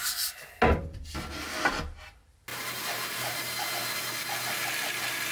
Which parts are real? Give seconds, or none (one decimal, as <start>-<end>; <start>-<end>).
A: 0.0-2.5; 3.7-5.3